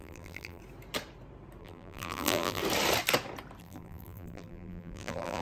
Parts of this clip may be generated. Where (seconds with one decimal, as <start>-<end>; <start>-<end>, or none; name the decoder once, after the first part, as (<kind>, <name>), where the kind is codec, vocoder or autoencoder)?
0.0-0.6 (vocoder, BigVGAN v2); 1.6-2.6; 3.6-5.4